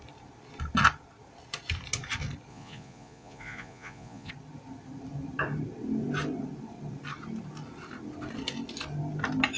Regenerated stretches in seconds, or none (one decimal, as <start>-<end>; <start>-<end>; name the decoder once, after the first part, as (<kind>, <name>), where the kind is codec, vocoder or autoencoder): 2.5-4.3 (vocoder, Vocos)